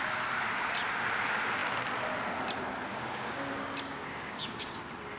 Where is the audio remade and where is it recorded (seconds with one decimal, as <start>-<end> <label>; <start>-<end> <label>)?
0.0-2.9 recorded; 2.9-3.5 remade; 3.5-4.0 recorded; 4.0-4.8 remade; 4.8-5.2 recorded